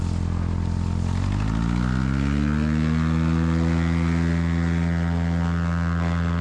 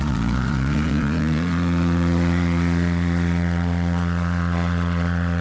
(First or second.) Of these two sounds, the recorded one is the first